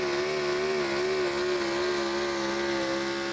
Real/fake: real